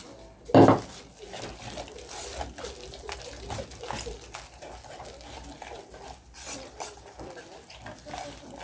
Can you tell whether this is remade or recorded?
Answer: recorded